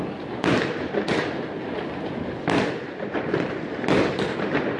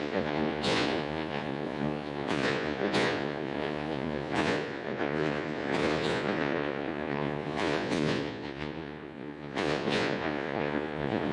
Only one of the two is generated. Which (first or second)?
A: second